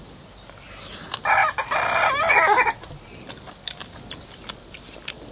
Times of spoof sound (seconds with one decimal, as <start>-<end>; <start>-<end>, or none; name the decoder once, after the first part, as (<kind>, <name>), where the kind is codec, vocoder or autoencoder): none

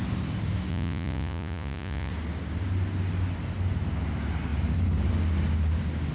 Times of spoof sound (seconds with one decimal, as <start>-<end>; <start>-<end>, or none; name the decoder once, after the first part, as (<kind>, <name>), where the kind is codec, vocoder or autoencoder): 0.7-2.1 (vocoder, Vocos)

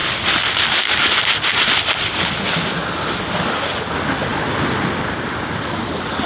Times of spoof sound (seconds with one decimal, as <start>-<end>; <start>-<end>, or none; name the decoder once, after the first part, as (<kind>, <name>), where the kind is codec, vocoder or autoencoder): none